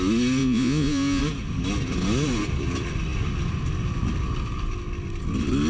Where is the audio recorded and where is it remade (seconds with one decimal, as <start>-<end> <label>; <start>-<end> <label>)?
0.0-0.4 recorded; 0.4-1.2 remade; 1.2-5.7 recorded